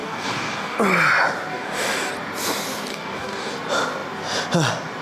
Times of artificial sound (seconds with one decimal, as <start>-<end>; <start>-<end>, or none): 0.0-0.8; 1.5-2.1; 2.9-3.5